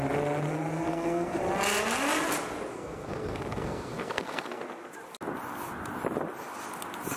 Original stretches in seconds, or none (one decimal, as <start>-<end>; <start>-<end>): 0.0-0.9; 1.4-2.7; 4.6-7.2